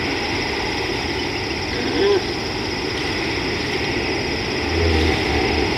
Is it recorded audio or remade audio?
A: recorded